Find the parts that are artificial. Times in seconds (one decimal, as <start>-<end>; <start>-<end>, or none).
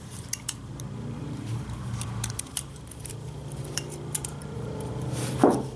0.0-5.8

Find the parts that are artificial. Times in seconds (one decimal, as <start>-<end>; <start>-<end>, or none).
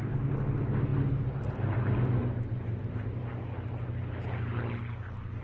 2.2-3.1